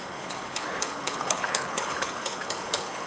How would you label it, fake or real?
fake